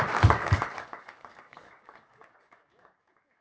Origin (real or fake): fake